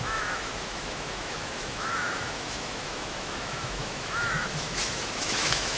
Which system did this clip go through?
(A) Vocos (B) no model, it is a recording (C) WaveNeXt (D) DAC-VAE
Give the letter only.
D